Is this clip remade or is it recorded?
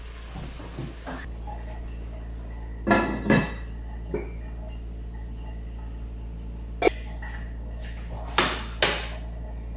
recorded